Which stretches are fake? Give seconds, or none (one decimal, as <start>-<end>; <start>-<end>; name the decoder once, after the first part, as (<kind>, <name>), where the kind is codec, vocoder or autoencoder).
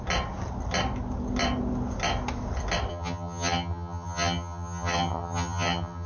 2.9-6.1 (vocoder, HiFi-GAN)